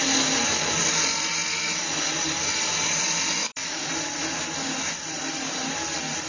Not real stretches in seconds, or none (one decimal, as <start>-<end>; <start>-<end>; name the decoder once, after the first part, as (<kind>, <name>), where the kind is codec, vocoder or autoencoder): 3.4-3.9 (autoencoder, DAC-VAE)